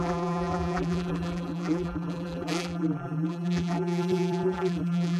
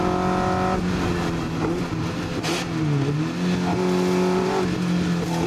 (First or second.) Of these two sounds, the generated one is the first